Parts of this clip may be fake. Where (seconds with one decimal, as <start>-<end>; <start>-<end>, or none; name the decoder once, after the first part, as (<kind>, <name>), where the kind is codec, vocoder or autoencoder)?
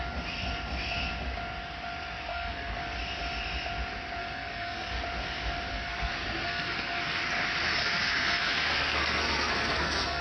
2.3-3.0 (codec, SNAC); 4.2-5.0; 5.7-7.2; 7.8-10.2